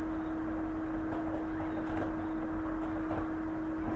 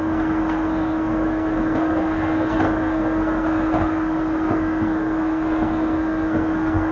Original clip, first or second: first